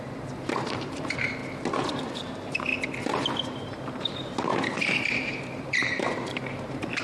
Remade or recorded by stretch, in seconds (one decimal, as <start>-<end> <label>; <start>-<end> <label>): 0.0-1.4 remade; 1.4-1.9 recorded; 1.9-2.7 remade; 2.7-3.4 recorded; 3.4-7.0 remade